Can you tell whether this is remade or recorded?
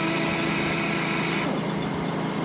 recorded